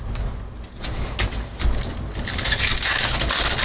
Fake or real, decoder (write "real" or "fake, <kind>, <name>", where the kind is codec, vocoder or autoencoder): real